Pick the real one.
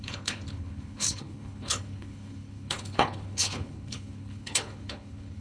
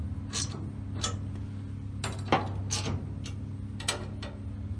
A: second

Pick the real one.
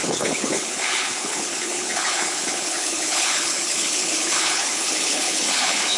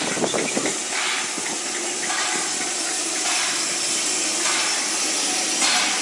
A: second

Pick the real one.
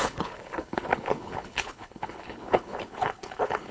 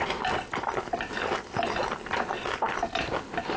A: second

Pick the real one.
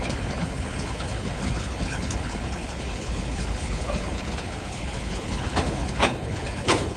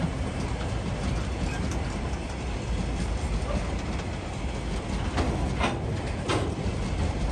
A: second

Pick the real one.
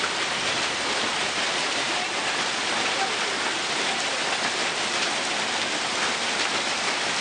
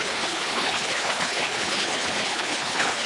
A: first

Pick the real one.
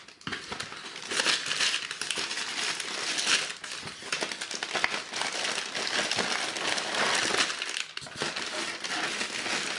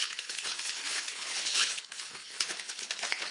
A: first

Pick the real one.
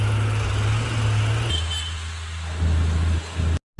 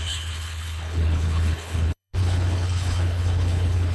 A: first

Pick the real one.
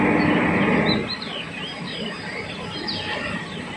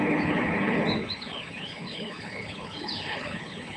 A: first